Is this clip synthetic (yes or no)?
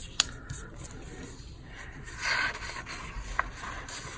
no